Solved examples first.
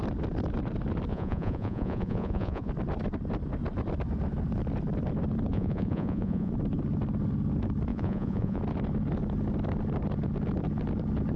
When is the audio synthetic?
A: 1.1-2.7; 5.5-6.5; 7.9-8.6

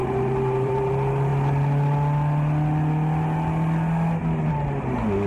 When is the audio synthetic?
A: 0.0-0.9

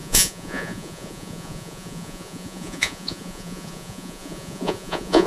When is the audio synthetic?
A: 0.0-5.3

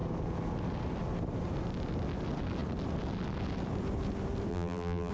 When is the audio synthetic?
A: 4.5-5.1

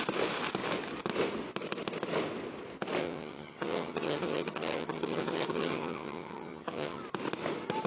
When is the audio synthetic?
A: 3.0-7.0

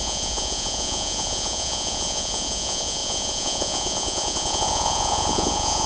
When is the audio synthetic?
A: 0.0-5.9